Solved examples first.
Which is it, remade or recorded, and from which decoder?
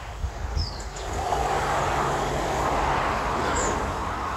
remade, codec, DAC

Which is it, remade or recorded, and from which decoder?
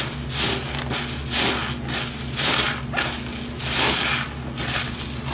recorded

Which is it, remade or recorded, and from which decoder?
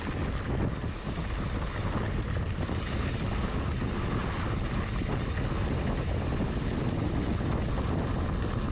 recorded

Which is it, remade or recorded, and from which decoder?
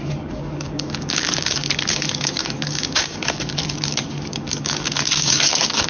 remade, codec, DAC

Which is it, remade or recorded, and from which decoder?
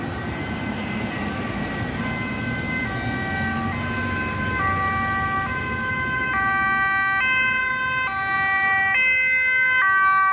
recorded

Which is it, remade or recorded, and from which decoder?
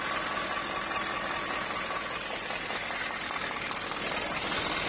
recorded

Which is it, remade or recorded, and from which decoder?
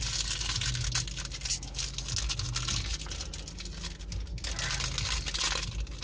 recorded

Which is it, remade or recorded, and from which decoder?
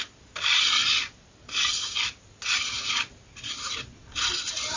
recorded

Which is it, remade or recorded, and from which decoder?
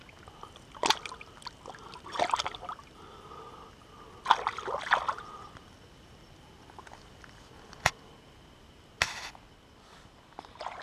recorded